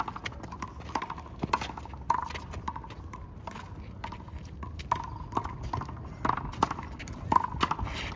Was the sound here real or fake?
real